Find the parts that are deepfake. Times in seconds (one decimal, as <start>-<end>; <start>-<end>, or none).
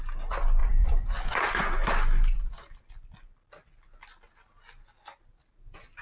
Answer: 0.6-2.9